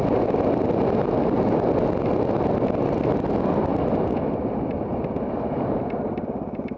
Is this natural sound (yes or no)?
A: yes